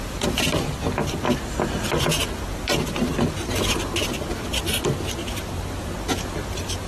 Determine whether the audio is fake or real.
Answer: real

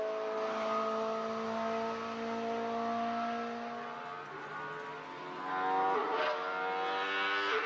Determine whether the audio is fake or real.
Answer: real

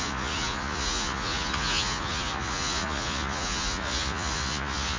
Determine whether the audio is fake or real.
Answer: fake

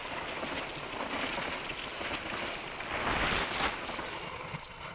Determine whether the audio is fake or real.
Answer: real